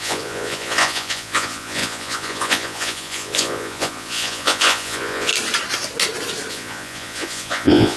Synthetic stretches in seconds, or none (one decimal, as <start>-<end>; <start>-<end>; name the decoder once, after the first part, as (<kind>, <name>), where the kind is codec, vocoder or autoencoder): 0.0-5.3 (vocoder, Vocos); 6.5-8.0